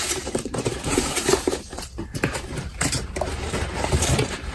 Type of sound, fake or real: fake